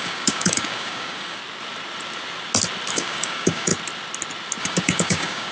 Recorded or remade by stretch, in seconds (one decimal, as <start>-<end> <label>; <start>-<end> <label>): 0.0-1.4 remade; 1.4-2.9 recorded; 2.9-3.7 remade; 3.7-4.6 recorded; 4.6-5.5 remade